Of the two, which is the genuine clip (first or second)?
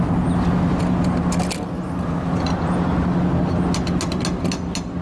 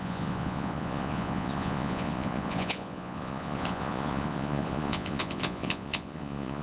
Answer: first